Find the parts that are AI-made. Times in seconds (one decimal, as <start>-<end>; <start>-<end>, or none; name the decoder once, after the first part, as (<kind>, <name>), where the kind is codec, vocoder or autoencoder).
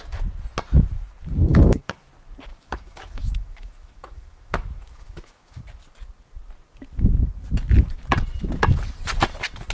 1.5-2.1 (autoencoder, DAC-VAE); 2.5-5.6